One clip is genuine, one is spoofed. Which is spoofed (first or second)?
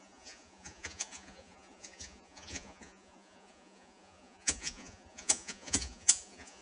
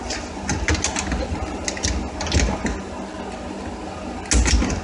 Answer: first